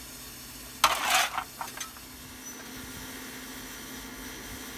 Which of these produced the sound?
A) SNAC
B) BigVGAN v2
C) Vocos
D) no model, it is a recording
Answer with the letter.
D